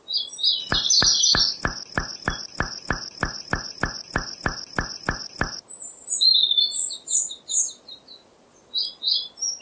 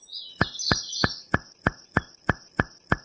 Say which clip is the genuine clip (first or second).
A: first